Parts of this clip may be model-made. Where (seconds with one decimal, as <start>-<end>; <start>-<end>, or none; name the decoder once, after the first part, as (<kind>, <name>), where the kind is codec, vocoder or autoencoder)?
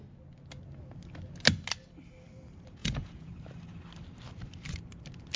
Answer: 2.8-3.3 (vocoder, Vocos)